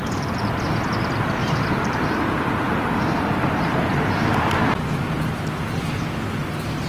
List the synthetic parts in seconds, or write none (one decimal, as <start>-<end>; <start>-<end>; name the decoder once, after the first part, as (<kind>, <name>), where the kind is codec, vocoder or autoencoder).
1.0-4.4 (vocoder, BigVGAN v2)